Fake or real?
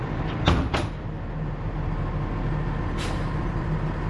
real